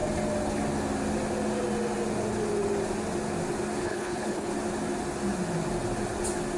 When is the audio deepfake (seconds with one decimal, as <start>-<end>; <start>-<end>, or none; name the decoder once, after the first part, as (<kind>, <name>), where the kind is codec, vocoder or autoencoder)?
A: 3.8-4.5 (codec, HILCodec)